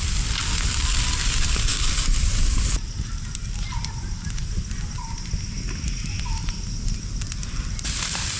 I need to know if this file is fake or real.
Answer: real